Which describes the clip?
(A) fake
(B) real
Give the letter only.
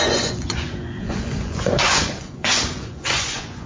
A